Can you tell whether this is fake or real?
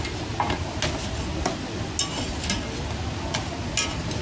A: real